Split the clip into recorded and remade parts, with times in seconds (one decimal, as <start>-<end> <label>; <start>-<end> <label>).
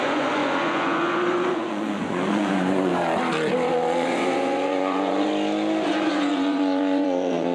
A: 0.0-2.9 remade; 2.9-3.7 recorded; 3.7-5.3 remade; 5.3-5.9 recorded; 5.9-7.5 remade